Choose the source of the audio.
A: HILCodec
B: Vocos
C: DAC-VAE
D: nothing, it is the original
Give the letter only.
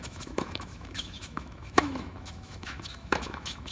C